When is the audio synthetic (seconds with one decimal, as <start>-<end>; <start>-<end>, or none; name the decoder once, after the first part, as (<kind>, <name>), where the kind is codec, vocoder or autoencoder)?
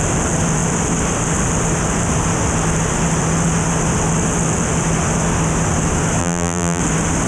6.2-6.8 (vocoder, BigVGAN v2)